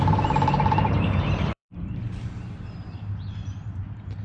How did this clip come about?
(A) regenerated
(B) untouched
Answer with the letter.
A